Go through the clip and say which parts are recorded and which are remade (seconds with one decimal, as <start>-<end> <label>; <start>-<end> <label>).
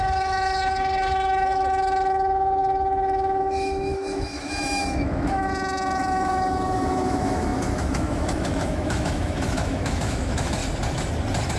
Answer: 0.0-10.6 remade; 10.6-11.6 recorded